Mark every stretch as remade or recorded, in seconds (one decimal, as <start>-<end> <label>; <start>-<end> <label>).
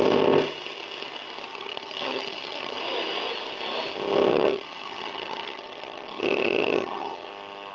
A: 0.0-1.5 recorded; 1.5-2.8 remade; 2.8-4.3 recorded; 4.3-7.3 remade; 7.3-7.7 recorded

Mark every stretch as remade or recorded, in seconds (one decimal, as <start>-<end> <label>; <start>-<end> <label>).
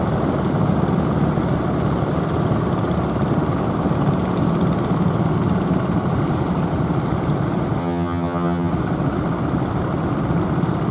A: 0.0-7.8 recorded; 7.8-8.7 remade; 8.7-10.9 recorded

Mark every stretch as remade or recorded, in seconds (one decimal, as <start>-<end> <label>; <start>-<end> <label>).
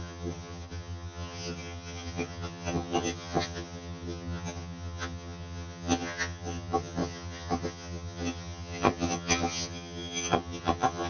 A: 0.0-11.1 remade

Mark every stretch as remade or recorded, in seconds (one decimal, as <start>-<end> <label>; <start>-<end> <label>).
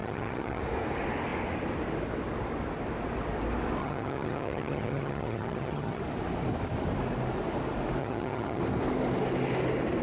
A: 0.0-0.6 remade; 0.6-3.8 recorded; 3.8-6.0 remade; 6.0-8.0 recorded; 8.0-8.6 remade; 8.6-10.0 recorded